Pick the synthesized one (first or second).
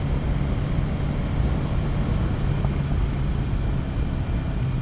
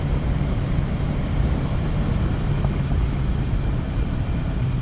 second